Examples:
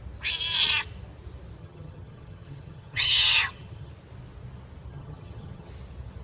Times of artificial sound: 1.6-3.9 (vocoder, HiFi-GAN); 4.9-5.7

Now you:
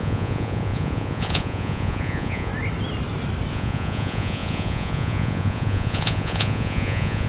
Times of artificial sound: 0.0-2.5 (vocoder, Vocos); 3.5-7.3

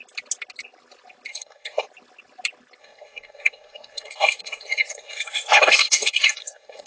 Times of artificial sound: 1.3-1.8 (codec, SNAC); 2.8-6.9

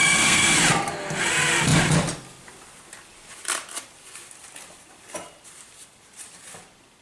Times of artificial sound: 0.0-0.5 (codec, SNAC)

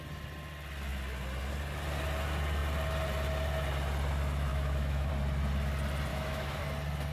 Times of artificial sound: 4.5-5.1 (autoencoder, DAC-VAE); 6.1-6.6

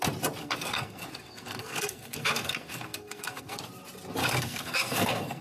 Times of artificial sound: 0.4-3.6 (codec, SNAC); 4.2-5.4

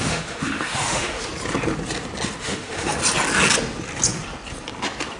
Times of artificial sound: 0.0-1.3 (autoencoder, DAC-VAE); 2.4-3.0

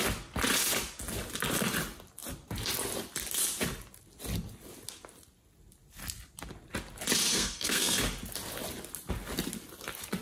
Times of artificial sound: 7.3-8.0 (codec, SNAC)